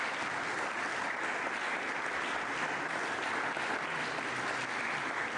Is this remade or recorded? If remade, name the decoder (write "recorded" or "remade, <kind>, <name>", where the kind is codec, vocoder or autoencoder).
recorded